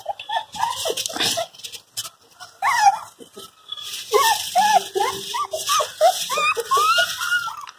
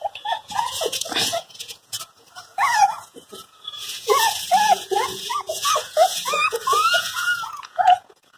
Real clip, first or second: first